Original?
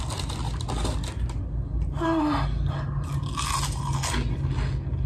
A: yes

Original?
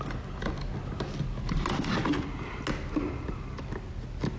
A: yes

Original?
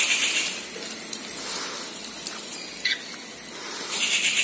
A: yes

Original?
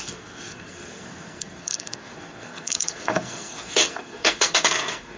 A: no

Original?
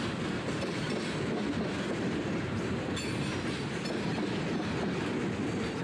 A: yes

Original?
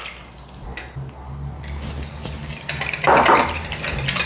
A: yes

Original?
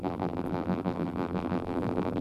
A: no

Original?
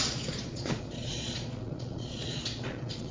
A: no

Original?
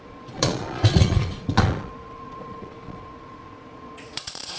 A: no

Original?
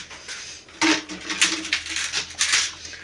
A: yes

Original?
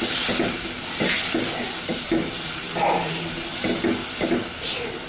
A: yes